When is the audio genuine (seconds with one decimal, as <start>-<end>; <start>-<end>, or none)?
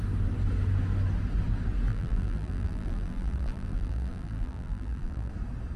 0.0-1.9; 5.3-5.8